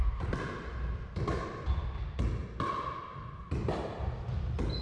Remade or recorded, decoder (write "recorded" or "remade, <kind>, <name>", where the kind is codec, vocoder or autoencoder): recorded